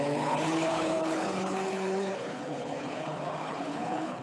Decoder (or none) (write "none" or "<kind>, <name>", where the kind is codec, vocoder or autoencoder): codec, HILCodec